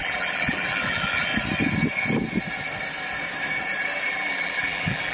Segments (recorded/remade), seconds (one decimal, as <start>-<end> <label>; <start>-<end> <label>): 0.0-1.3 remade; 1.3-4.1 recorded; 4.1-5.1 remade